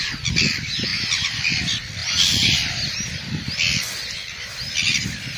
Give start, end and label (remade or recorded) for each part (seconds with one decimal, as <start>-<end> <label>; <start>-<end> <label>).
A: 0.0-2.0 recorded; 2.0-3.2 remade; 3.2-5.4 recorded